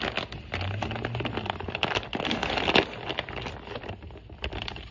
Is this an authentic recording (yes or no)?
yes